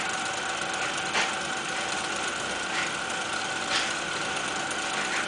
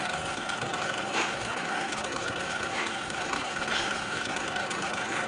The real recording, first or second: first